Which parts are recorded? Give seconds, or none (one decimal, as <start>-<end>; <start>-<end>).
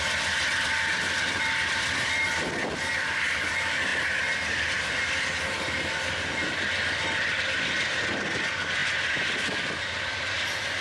0.0-10.8